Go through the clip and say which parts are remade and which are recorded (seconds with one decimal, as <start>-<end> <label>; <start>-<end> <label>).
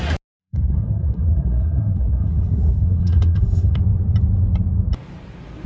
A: 0.0-0.4 recorded; 0.4-3.8 remade; 3.8-5.7 recorded